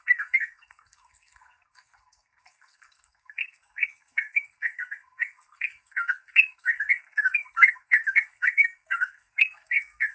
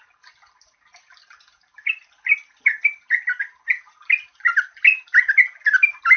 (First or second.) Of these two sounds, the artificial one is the first